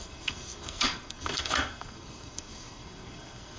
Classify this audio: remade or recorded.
remade